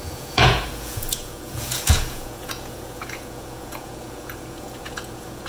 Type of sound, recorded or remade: remade